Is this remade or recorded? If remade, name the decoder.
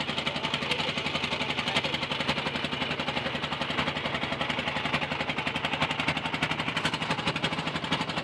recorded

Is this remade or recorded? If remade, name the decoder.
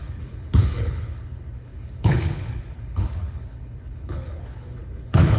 remade, codec, HILCodec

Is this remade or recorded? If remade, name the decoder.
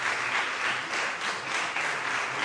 recorded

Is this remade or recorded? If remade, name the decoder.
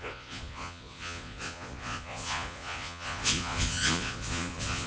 remade, vocoder, Vocos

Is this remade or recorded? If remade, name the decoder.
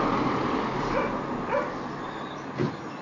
recorded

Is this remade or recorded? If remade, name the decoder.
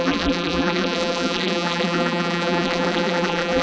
remade, vocoder, BigVGAN v2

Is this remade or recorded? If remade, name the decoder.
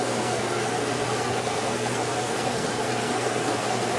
remade, codec, SNAC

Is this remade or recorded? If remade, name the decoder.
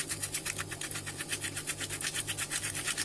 recorded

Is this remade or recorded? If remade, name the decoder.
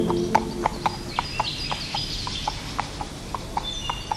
recorded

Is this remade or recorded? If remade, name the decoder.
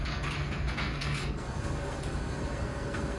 remade, codec, SNAC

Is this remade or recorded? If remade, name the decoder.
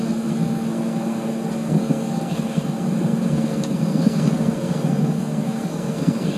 remade, codec, SNAC